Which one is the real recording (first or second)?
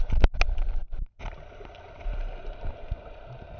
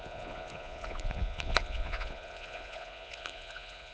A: first